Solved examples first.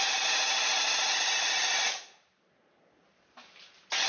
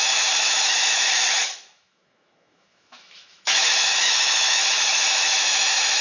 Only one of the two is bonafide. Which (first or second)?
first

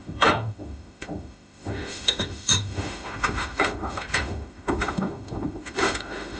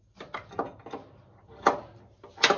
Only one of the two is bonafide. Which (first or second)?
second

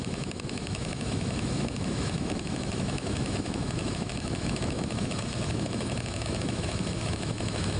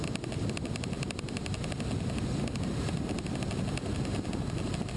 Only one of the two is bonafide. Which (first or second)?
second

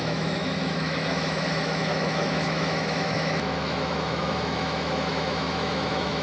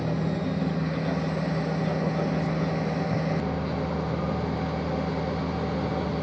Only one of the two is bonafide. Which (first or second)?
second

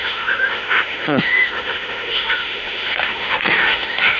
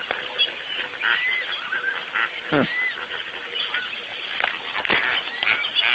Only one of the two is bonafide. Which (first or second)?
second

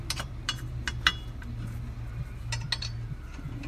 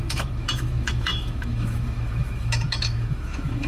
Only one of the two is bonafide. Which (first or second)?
first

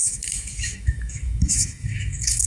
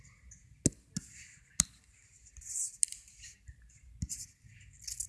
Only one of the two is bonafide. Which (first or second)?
second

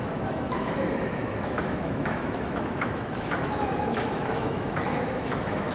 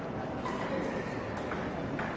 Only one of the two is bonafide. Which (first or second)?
second